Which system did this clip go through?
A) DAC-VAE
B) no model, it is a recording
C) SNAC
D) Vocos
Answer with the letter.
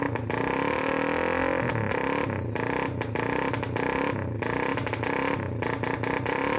B